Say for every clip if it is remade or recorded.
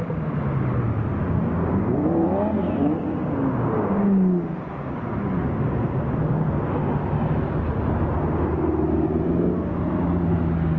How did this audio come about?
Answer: recorded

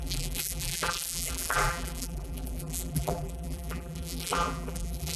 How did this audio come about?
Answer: remade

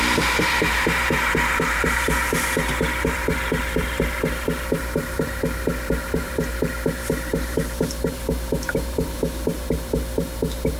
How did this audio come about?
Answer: remade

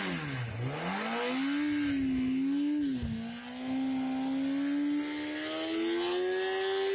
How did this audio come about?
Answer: recorded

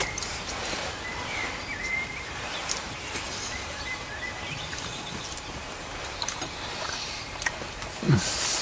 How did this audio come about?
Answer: remade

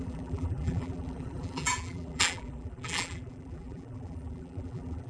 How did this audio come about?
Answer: remade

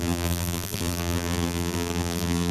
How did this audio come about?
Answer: remade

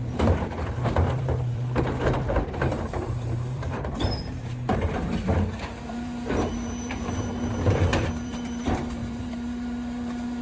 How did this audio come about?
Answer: remade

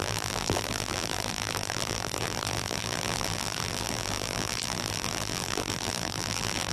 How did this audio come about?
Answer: remade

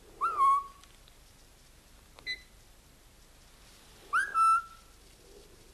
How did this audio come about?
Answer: recorded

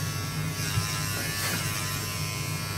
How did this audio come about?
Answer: remade